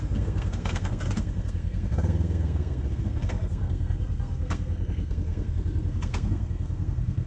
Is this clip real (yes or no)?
no